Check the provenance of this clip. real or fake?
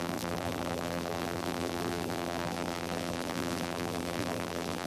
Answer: fake